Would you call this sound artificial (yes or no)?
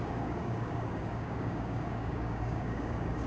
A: yes